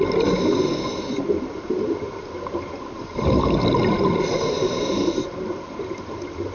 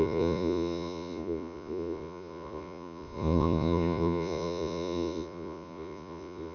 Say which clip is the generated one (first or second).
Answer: second